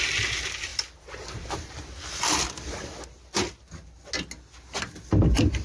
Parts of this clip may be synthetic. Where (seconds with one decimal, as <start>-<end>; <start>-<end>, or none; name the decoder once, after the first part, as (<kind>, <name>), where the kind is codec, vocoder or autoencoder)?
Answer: none